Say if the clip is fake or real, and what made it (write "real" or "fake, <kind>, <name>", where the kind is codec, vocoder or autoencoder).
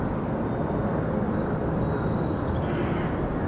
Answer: real